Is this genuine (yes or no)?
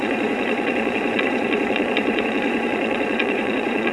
no